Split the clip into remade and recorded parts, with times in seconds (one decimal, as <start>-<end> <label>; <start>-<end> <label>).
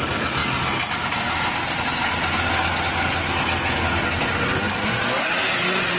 0.0-6.0 recorded